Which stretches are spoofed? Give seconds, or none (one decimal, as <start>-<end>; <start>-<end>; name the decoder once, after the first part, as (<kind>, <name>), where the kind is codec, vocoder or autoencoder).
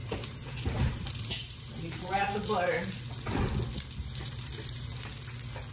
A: 0.0-2.4 (vocoder, BigVGAN v2); 4.0-4.9